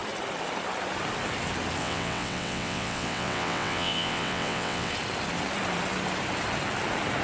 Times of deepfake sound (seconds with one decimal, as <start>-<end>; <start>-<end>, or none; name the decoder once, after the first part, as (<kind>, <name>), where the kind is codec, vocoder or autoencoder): 1.8-4.9 (vocoder, WaveNeXt)